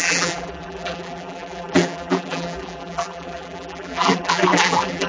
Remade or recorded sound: remade